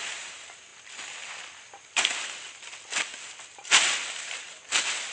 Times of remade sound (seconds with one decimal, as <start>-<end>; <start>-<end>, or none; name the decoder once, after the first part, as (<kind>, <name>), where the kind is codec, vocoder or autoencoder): 0.0-0.7 (vocoder, BigVGAN v2); 3.5-5.1